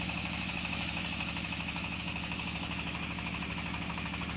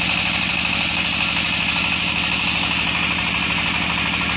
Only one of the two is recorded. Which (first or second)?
second